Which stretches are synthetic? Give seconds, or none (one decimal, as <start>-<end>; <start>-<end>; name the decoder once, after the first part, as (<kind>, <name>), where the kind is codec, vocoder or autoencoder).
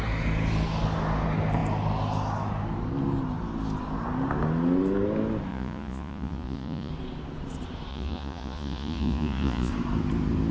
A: 5.5-6.9 (vocoder, Vocos); 7.9-9.7